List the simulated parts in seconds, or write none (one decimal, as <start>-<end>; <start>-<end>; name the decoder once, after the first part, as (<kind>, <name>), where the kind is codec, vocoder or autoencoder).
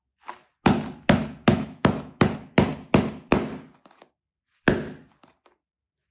1.5-2.2 (autoencoder, DAC-VAE)